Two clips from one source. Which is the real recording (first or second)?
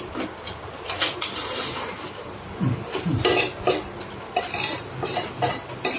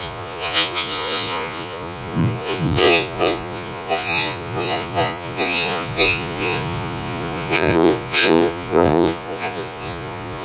first